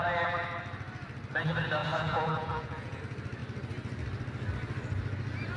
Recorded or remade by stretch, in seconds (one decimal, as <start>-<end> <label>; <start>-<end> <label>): 0.0-1.8 recorded; 1.8-3.0 remade; 3.0-5.6 recorded